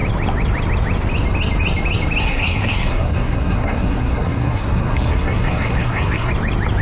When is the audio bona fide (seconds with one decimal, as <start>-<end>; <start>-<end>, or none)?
0.0-2.2; 6.3-6.8